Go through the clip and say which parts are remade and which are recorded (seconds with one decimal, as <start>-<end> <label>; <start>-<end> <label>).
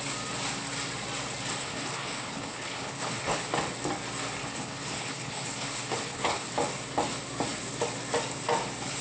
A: 0.0-1.6 recorded; 1.6-3.5 remade; 3.5-4.4 recorded; 4.4-6.5 remade; 6.5-9.0 recorded